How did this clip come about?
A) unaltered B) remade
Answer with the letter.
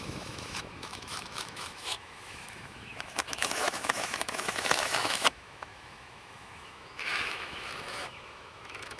B